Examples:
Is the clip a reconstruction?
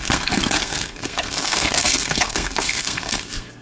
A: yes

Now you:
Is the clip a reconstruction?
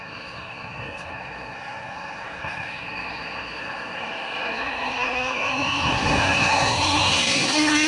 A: yes